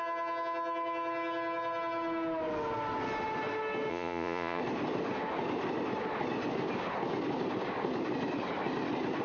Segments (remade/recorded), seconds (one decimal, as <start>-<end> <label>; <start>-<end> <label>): 0.0-3.9 recorded; 3.9-4.6 remade; 4.6-9.2 recorded